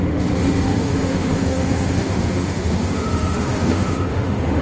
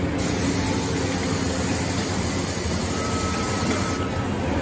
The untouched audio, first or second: second